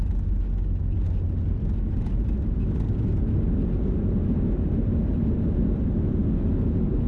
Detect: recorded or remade recorded